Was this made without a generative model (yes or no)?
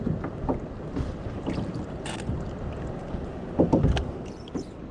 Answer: yes